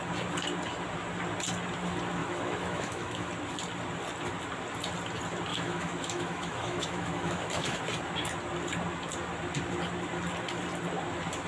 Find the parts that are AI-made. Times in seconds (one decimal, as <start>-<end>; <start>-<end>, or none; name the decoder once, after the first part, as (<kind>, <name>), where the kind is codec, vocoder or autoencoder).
2.2-3.3 (autoencoder, DAC-VAE); 5.5-7.8